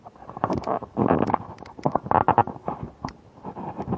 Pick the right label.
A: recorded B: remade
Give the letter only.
A